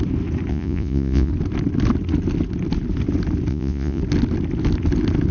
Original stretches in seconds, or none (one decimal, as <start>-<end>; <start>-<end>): 0.0-0.5; 1.3-3.5; 4.0-5.3